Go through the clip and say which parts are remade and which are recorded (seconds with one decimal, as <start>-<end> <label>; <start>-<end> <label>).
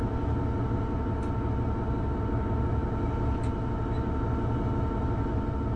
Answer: 0.0-5.8 recorded